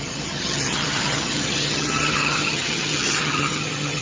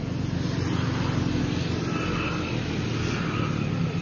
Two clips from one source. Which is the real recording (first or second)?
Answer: second